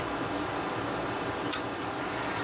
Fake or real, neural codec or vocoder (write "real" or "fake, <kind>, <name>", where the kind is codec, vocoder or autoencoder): real